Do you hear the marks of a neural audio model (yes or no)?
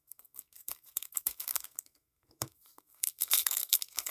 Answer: yes